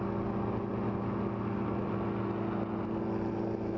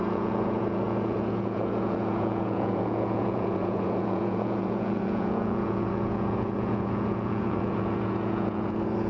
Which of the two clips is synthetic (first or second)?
second